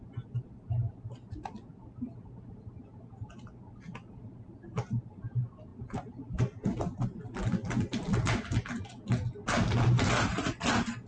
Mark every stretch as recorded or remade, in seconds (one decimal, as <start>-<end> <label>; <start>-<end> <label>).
0.0-11.1 recorded